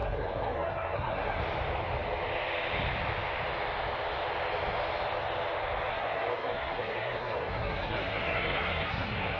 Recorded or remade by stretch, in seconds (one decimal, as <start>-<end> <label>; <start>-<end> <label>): 0.0-1.4 remade; 1.4-5.9 recorded; 5.9-9.4 remade

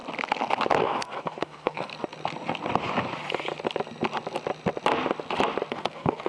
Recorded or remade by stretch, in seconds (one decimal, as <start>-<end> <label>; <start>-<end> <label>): 0.0-0.8 recorded; 0.8-1.9 remade; 1.9-5.7 recorded; 5.7-6.3 remade

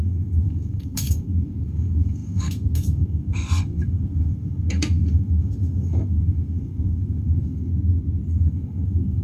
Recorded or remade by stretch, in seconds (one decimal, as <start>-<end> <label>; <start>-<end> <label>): 0.0-7.7 remade; 7.7-8.3 recorded; 8.3-9.2 remade

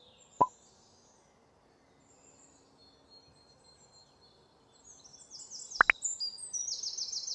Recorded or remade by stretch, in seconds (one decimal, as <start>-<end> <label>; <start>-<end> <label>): 0.0-7.3 recorded

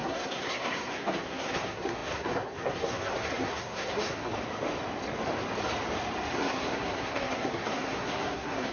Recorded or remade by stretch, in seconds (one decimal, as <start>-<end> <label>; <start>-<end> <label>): 0.0-4.3 remade; 4.3-6.3 recorded; 6.3-8.7 remade

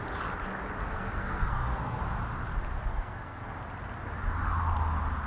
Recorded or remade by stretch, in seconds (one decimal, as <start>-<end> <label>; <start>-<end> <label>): 0.0-0.8 recorded; 0.8-2.0 remade; 2.0-2.9 recorded; 2.9-3.5 remade; 3.5-5.3 recorded

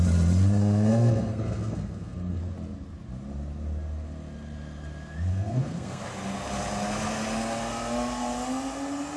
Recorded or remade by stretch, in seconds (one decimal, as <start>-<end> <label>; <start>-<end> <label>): 0.0-0.6 recorded; 0.6-2.4 remade; 2.4-5.3 recorded; 5.3-6.0 remade; 6.0-9.2 recorded